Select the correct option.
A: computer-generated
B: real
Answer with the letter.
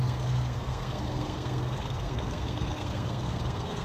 A